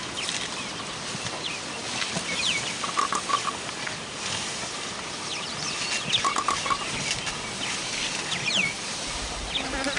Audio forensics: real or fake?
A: real